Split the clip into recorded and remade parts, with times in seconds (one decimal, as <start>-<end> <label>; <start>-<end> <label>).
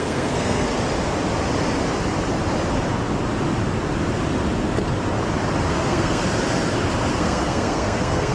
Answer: 0.0-0.7 remade; 0.7-5.7 recorded; 5.7-6.2 remade; 6.2-7.1 recorded; 7.1-8.3 remade